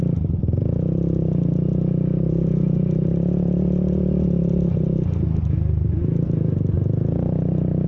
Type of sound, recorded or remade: recorded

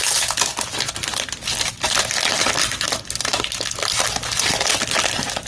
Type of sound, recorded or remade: recorded